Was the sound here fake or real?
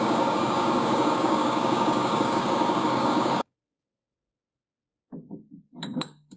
fake